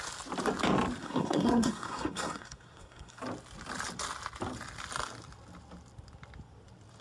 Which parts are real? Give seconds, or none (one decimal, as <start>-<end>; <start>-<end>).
0.0-1.0; 3.2-7.0